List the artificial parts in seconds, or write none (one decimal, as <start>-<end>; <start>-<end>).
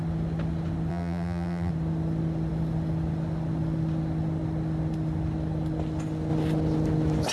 0.9-1.7